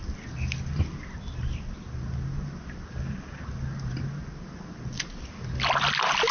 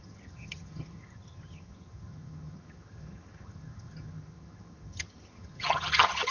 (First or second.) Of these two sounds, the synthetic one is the second